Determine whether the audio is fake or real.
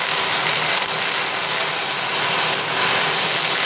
real